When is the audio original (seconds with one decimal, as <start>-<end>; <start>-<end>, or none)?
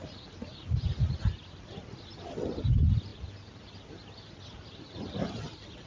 0.0-5.9